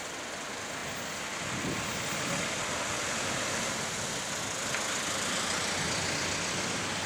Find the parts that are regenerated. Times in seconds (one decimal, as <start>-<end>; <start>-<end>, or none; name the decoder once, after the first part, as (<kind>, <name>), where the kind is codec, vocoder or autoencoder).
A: none